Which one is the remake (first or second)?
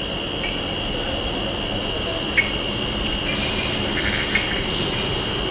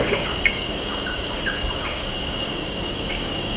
second